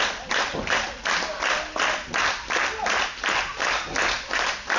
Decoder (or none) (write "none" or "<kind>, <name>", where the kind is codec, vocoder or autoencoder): none